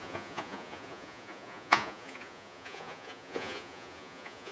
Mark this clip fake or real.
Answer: fake